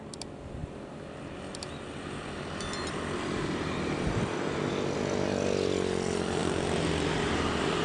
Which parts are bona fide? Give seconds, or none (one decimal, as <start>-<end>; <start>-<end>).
0.0-7.8